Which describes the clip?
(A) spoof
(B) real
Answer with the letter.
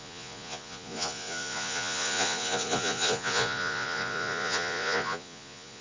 A